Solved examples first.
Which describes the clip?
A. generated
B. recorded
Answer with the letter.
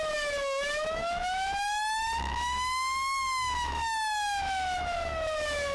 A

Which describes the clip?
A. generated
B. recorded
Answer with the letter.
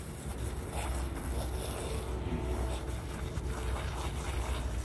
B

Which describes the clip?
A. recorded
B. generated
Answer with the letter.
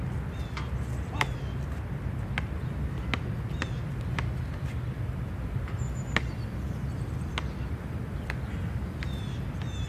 A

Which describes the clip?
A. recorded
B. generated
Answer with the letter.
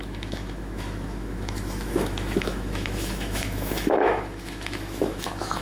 B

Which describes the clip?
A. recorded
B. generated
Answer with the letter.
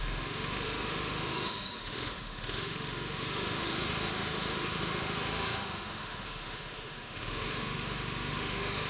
B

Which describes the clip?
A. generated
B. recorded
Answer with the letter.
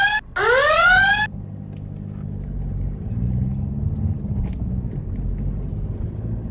B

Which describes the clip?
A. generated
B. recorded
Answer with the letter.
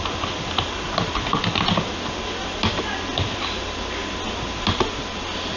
B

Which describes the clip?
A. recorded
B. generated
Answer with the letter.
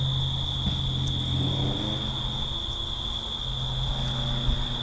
A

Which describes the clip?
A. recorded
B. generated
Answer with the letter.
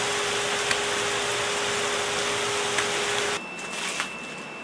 A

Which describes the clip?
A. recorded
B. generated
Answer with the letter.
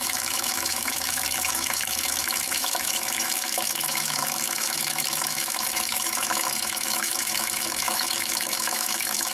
B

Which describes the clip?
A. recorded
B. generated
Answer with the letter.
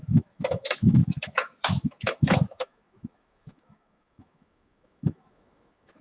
B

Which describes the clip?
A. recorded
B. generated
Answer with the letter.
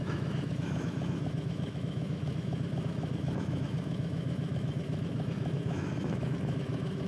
B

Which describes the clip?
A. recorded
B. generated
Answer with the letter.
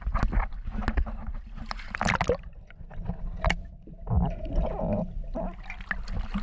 A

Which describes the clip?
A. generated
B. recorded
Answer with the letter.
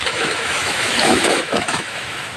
A